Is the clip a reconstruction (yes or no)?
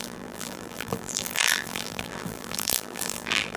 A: yes